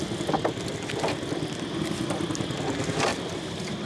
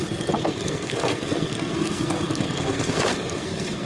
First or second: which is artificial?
second